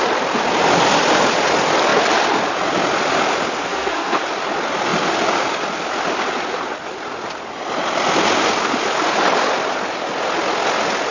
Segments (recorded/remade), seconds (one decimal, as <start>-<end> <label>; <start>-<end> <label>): 0.0-3.6 recorded; 3.6-4.2 remade; 4.2-11.1 recorded